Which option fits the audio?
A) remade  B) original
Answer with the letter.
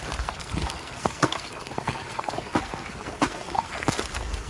A